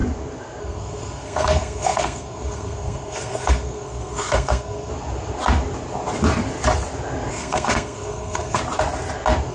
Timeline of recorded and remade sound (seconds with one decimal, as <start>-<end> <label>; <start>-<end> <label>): 0.0-0.6 recorded; 0.6-4.9 remade; 4.9-7.3 recorded; 7.3-8.6 remade; 8.6-9.5 recorded